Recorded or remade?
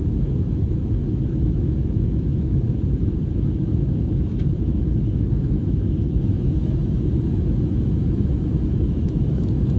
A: remade